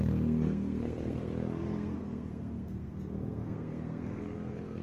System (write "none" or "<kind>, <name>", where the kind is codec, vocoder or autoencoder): codec, SNAC